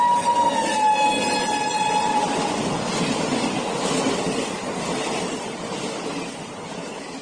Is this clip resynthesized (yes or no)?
no